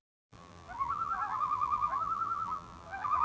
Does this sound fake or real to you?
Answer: fake